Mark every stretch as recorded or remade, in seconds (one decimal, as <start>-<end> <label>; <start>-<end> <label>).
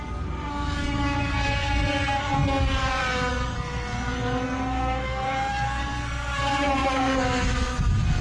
0.0-8.2 remade